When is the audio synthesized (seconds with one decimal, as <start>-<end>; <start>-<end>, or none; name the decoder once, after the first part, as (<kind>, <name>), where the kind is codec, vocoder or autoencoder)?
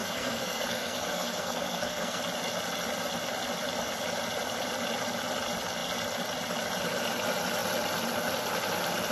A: 0.0-2.2 (codec, SNAC)